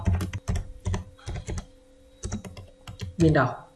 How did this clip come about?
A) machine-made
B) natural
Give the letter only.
B